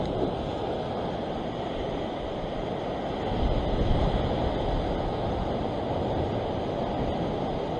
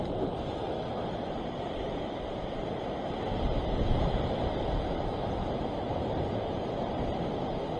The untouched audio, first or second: first